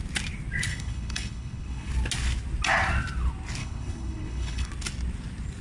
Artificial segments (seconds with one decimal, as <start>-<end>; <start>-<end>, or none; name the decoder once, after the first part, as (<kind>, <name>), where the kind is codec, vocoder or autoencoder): 0.7-1.9 (codec, HILCodec); 3.6-4.7